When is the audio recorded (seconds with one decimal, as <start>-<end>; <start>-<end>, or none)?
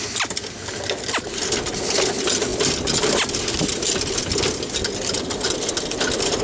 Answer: 0.0-6.4